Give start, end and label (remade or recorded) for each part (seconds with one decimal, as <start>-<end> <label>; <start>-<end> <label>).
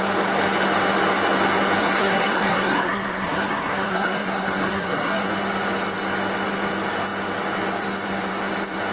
0.0-1.8 recorded; 1.8-5.3 remade; 5.3-8.9 recorded